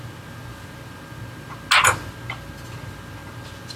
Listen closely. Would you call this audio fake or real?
real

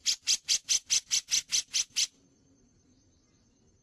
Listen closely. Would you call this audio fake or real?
real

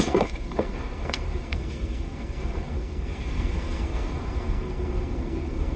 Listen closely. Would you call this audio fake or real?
fake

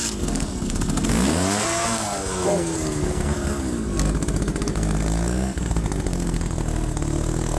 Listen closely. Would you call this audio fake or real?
fake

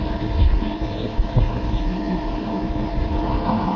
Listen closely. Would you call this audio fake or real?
fake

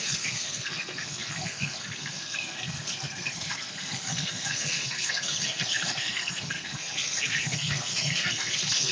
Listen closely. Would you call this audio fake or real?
fake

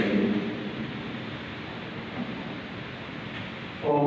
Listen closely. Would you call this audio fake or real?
real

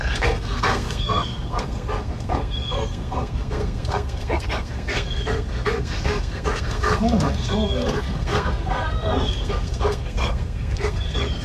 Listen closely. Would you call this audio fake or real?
fake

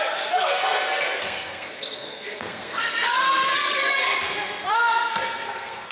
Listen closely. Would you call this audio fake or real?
fake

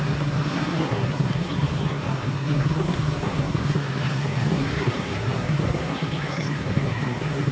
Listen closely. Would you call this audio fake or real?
fake